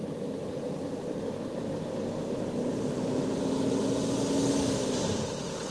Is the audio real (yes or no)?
yes